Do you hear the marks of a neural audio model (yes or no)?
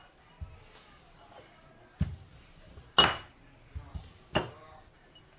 no